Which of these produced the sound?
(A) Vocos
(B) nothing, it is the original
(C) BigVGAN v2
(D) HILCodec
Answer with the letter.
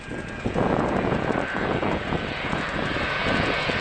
A